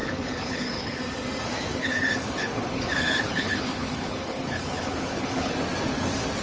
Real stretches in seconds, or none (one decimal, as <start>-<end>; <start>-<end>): 1.0-1.7; 5.5-6.4